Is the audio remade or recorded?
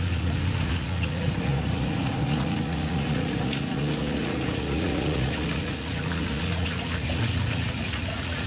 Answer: remade